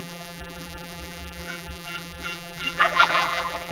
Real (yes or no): no